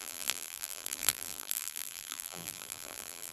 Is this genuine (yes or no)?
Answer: no